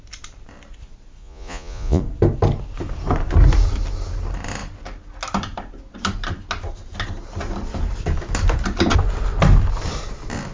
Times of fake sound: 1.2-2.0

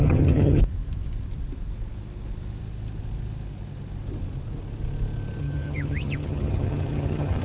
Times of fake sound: 0.0-0.6; 5.4-7.4